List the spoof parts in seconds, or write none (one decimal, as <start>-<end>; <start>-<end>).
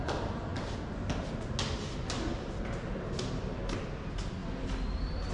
none